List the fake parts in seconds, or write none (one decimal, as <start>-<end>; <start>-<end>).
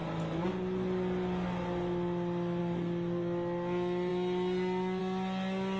none